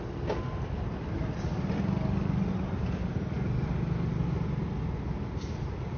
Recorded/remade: recorded